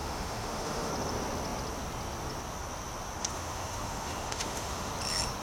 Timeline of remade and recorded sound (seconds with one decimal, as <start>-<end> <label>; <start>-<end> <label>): 0.0-0.9 remade; 0.9-3.2 recorded; 3.2-4.9 remade; 4.9-5.4 recorded